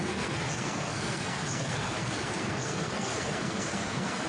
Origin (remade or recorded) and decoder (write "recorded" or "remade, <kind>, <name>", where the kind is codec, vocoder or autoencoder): remade, codec, SNAC